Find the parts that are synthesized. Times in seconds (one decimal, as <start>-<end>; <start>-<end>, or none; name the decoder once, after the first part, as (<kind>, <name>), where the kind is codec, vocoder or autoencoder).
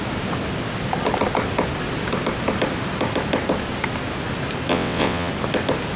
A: 4.7-5.3 (vocoder, WaveNeXt)